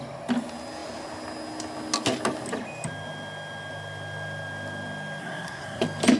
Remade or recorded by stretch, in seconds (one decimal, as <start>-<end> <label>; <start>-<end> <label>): 0.0-5.2 recorded; 5.2-5.8 remade; 5.8-6.2 recorded